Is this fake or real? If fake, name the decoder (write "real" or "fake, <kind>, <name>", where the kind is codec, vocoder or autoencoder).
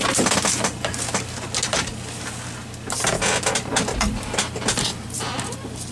real